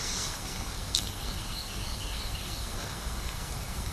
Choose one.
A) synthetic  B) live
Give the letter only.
A